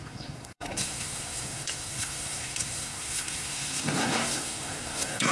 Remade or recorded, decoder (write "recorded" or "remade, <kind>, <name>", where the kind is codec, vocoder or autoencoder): remade, codec, SNAC